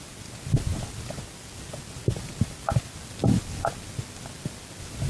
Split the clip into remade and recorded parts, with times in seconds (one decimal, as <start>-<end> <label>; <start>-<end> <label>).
0.0-5.1 recorded